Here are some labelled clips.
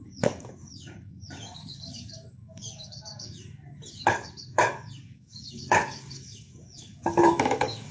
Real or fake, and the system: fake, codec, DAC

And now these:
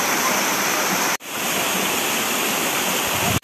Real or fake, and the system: fake, vocoder, BigVGAN v2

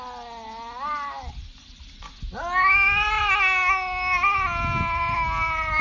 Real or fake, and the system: real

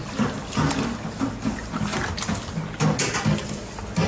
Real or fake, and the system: real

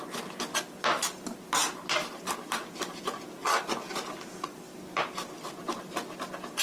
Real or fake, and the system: real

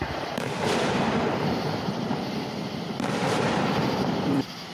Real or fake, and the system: fake, vocoder, BigVGAN v2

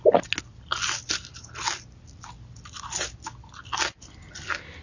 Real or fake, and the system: real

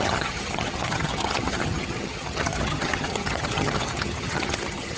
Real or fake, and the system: fake, vocoder, HiFi-GAN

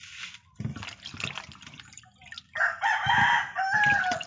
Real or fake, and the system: real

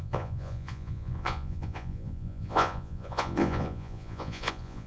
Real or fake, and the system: fake, vocoder, Vocos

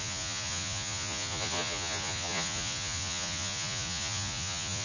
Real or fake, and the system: fake, vocoder, Vocos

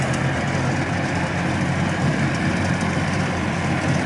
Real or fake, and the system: fake, vocoder, BigVGAN v2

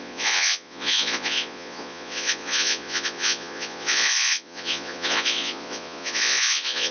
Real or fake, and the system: fake, vocoder, Vocos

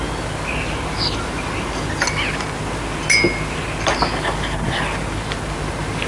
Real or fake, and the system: real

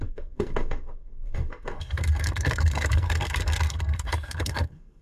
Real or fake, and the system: fake, codec, SNAC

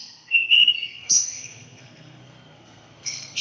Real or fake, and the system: fake, codec, SNAC